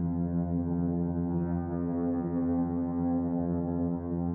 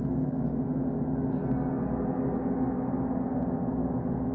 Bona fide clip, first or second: second